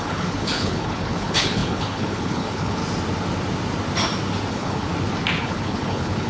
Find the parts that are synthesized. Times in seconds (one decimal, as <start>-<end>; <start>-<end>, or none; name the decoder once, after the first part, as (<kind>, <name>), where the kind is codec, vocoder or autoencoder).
0.0-2.8 (codec, HILCodec); 4.5-4.9; 5.4-6.3